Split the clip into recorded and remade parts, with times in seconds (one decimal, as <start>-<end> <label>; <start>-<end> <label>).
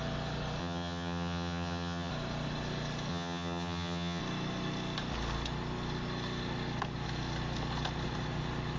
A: 0.0-0.6 recorded; 0.6-2.1 remade; 2.1-3.1 recorded; 3.1-4.2 remade; 4.2-8.8 recorded